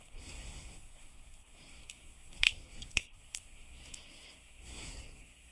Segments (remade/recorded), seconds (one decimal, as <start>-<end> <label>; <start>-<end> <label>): 0.0-5.5 remade